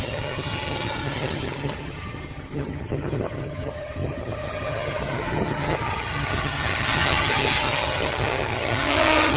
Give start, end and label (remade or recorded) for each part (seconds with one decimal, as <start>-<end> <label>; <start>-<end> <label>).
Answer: 0.0-9.4 remade